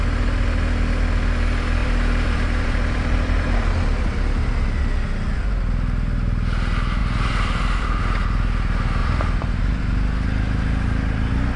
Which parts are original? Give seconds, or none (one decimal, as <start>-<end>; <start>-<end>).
0.0-1.8; 3.6-7.0; 8.0-9.0; 9.6-11.6